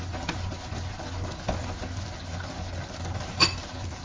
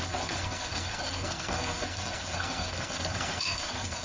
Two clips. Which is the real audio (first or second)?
first